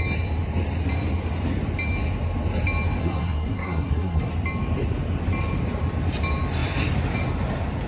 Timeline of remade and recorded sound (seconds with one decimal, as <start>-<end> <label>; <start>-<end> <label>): 0.0-3.0 recorded; 3.0-4.3 remade; 4.3-7.9 recorded